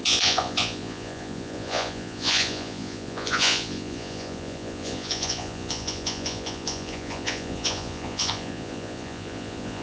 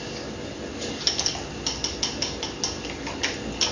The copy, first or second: first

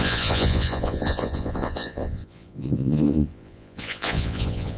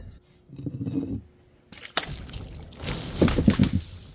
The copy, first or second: first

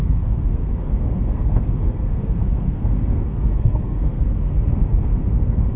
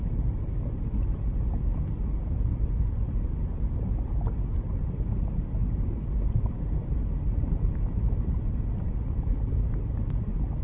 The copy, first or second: first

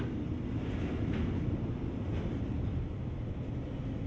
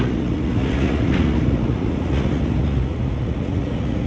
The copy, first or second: second